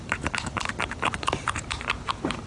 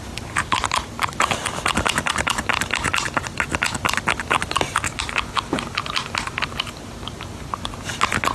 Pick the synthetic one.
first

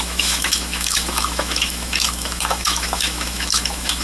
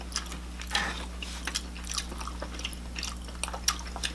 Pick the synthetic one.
first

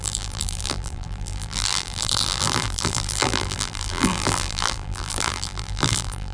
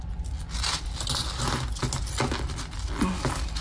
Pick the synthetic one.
first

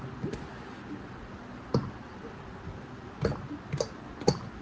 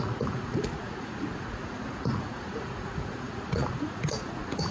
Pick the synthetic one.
second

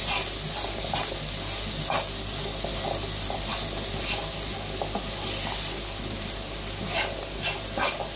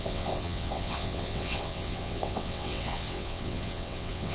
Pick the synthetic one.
second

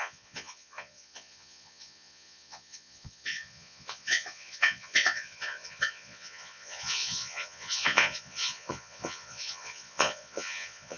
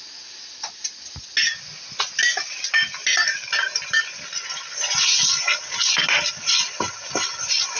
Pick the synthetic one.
first